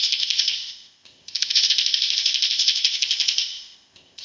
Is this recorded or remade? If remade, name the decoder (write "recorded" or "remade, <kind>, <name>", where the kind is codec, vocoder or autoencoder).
remade, codec, ZipCodec